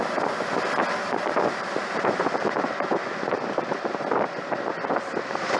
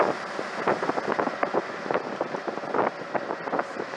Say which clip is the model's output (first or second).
first